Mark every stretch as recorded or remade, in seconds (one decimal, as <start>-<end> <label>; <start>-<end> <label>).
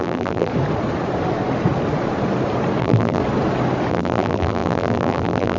0.0-0.5 remade; 0.5-2.8 recorded; 2.8-3.2 remade; 3.2-3.9 recorded; 3.9-5.6 remade